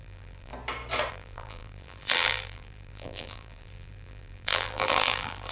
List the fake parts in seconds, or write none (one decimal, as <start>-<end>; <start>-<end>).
0.0-0.5; 1.1-5.5